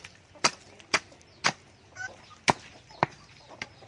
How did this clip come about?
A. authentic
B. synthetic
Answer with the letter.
A